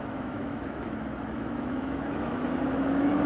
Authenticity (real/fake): fake